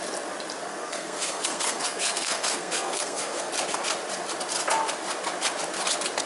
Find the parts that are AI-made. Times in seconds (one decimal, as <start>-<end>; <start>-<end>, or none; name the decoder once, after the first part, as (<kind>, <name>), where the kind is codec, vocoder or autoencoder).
0.7-3.5 (codec, SNAC)